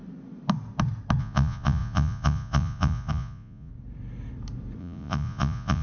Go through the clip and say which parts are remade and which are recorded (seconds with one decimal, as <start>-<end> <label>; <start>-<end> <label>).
0.0-1.2 recorded; 1.2-3.7 remade; 3.7-4.8 recorded; 4.8-5.8 remade